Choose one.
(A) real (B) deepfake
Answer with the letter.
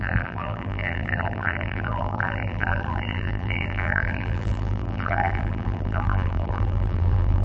B